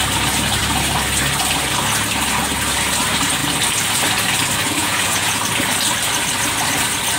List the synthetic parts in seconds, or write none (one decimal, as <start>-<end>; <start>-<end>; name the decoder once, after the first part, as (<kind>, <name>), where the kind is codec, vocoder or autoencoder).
4.8-5.4 (vocoder, Vocos)